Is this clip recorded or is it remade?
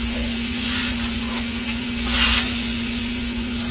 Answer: remade